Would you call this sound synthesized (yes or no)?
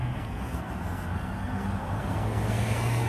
yes